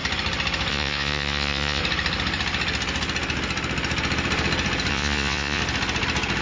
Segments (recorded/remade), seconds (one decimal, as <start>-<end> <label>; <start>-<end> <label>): 0.0-0.7 recorded; 0.7-1.8 remade; 1.8-4.9 recorded; 4.9-5.6 remade; 5.6-6.4 recorded